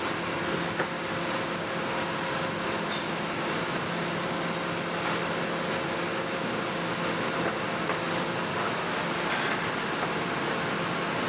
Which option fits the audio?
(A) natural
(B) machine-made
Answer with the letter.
A